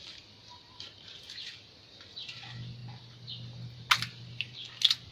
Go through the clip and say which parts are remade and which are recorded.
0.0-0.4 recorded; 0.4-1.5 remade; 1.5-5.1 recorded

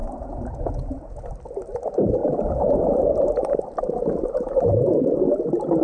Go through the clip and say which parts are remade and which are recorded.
0.0-1.2 remade; 1.2-5.8 recorded

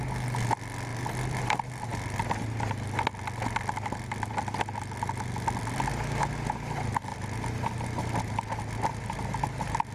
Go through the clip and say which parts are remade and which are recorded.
0.0-0.9 recorded; 0.9-1.4 remade; 1.4-7.1 recorded; 7.1-7.7 remade; 7.7-9.9 recorded

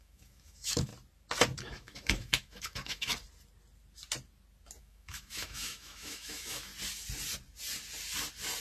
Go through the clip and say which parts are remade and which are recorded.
0.0-0.9 remade; 0.9-1.6 recorded; 1.6-3.1 remade; 3.1-4.8 recorded; 4.8-6.7 remade; 6.7-8.6 recorded

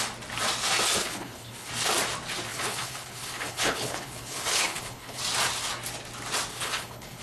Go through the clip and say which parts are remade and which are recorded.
0.0-1.0 recorded; 1.0-1.7 remade; 1.7-2.5 recorded; 2.5-5.2 remade; 5.2-6.5 recorded; 6.5-7.2 remade